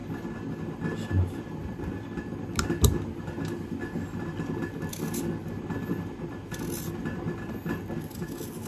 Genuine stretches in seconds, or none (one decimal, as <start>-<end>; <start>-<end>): 0.0-8.7

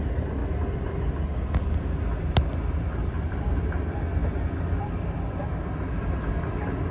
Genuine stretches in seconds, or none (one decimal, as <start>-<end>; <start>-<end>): 0.0-6.9

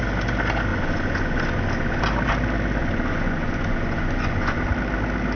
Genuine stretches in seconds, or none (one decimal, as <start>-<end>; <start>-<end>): 0.0-0.7; 2.0-2.8; 4.6-5.4

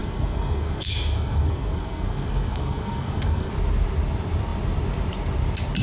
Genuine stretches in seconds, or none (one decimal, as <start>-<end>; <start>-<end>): 3.5-5.8

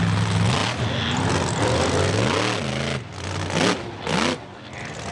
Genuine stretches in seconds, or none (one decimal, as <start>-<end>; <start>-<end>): 0.0-5.1

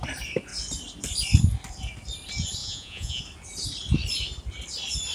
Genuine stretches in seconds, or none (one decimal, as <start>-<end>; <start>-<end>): 0.0-2.6; 3.2-5.1

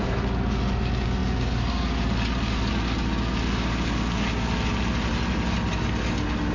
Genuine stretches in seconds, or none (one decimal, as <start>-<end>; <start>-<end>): 0.0-6.5

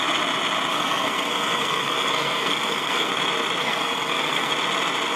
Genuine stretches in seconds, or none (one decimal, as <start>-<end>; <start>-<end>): 0.0-0.7; 3.1-3.6; 4.5-5.2